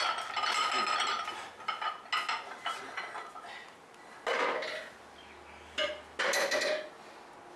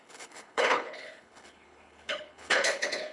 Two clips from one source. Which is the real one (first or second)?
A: first